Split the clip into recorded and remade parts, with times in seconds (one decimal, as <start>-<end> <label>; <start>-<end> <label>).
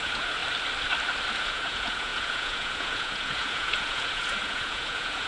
0.0-0.4 remade; 0.4-1.3 recorded; 1.3-5.3 remade